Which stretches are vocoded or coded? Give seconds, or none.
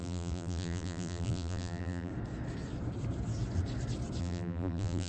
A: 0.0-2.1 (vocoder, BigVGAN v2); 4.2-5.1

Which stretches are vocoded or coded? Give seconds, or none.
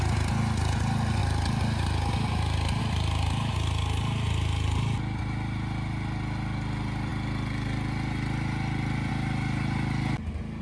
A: none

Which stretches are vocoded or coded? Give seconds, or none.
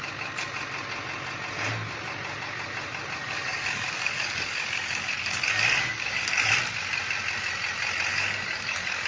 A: 3.2-6.5 (codec, DAC); 8.1-9.1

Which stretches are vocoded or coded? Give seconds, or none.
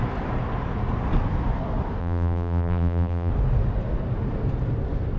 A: 2.0-3.3 (vocoder, BigVGAN v2)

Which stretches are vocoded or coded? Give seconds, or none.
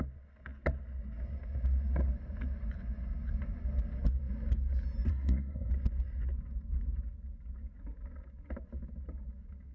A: 5.1-5.7 (codec, SNAC)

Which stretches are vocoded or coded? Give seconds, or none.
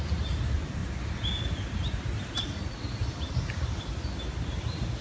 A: none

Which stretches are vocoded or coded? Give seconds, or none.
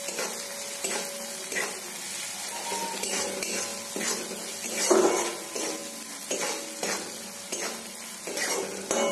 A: none